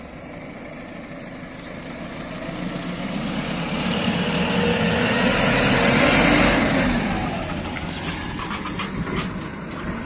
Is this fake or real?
real